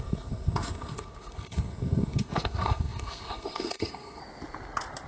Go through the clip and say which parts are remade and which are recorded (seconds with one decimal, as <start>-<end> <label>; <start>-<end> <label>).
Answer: 0.0-4.2 remade; 4.2-5.1 recorded